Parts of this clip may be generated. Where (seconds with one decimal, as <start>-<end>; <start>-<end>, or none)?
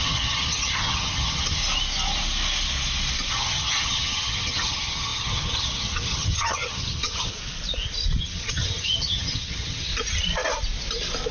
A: 0.0-1.6; 3.3-7.3; 8.2-9.9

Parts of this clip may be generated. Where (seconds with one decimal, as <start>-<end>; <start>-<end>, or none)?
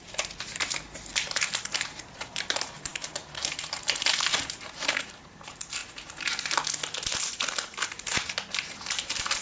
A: 0.0-5.8; 7.2-8.1; 8.9-9.4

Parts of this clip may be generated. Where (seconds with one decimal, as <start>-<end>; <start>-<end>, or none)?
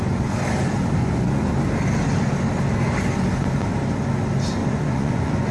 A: 1.0-1.5; 4.6-5.5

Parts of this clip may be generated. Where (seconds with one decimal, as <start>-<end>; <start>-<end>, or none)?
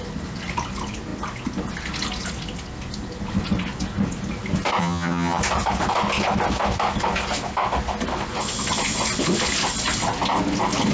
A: 4.8-5.4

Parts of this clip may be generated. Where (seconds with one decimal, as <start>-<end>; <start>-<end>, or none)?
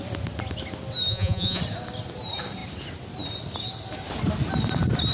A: 1.1-1.6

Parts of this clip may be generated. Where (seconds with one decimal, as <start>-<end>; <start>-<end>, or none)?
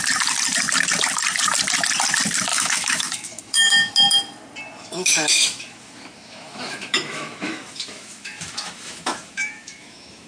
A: 2.5-3.9; 4.8-10.3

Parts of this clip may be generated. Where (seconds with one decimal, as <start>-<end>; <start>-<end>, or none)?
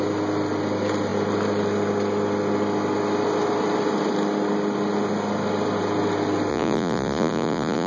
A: 6.5-7.9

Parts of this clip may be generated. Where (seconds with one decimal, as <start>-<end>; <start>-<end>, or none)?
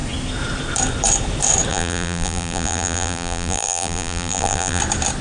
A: 1.7-4.8